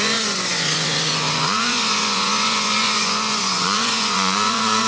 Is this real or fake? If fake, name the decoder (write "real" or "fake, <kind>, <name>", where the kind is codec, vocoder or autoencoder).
fake, vocoder, Vocos